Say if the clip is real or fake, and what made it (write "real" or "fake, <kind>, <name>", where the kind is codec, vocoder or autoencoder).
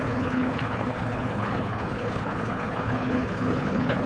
fake, codec, HILCodec